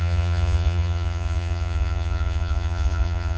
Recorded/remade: remade